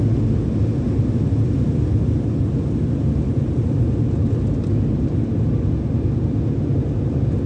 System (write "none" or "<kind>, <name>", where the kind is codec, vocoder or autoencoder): none